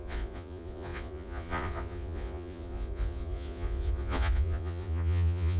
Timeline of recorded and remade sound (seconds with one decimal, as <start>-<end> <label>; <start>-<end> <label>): 0.0-5.6 remade

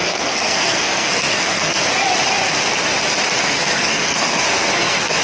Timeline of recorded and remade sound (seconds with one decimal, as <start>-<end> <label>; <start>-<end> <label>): 0.0-1.8 remade; 1.8-3.4 recorded; 3.4-5.2 remade

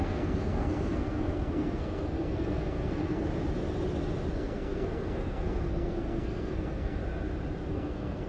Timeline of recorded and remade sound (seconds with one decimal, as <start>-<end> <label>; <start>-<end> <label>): 0.0-3.3 remade; 3.3-4.3 recorded; 4.3-7.0 remade; 7.0-7.7 recorded; 7.7-8.3 remade

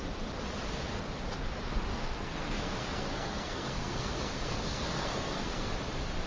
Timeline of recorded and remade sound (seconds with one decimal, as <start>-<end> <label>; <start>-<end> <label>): 0.0-1.9 recorded; 1.9-5.7 remade; 5.7-6.3 recorded

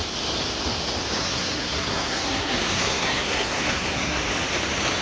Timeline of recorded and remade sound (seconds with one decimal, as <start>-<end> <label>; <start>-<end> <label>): 0.0-1.2 recorded; 1.2-4.2 remade; 4.2-5.0 recorded

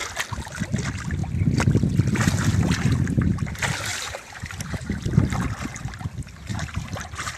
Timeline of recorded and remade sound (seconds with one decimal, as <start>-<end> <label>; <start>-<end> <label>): 0.0-3.9 recorded; 3.9-4.9 remade; 4.9-6.5 recorded; 6.5-7.4 remade